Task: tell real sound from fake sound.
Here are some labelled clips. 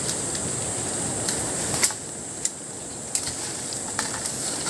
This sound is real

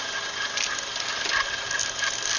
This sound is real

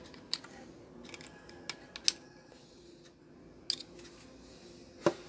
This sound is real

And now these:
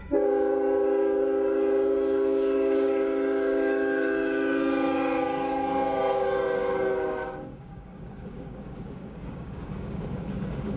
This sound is fake